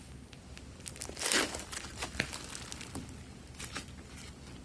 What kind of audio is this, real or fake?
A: real